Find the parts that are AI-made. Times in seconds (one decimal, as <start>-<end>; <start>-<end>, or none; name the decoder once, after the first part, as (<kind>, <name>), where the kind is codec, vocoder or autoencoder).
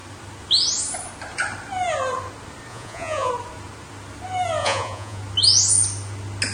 2.7-3.3 (vocoder, Vocos); 4.6-5.2